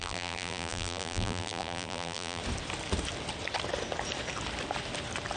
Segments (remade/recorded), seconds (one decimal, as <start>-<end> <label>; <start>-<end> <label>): 0.0-2.4 remade; 2.4-5.4 recorded